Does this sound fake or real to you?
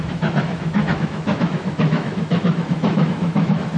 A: fake